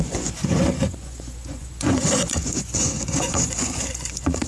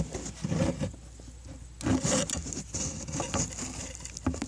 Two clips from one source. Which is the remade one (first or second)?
first